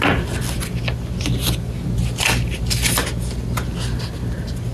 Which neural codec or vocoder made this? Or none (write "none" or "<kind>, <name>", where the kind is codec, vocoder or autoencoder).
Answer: none